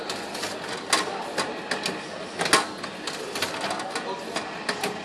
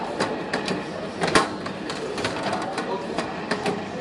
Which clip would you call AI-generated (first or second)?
second